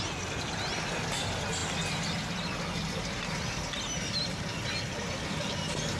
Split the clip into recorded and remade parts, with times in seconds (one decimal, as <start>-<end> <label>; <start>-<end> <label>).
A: 0.0-6.0 recorded